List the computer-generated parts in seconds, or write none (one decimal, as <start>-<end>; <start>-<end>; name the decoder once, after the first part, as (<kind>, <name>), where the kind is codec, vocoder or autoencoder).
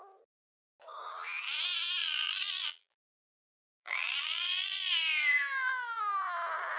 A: 2.0-6.0 (vocoder, BigVGAN v2)